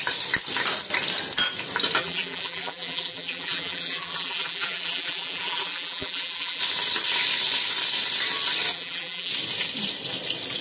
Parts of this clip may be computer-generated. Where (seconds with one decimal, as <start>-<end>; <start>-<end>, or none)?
2.0-6.6; 8.7-9.3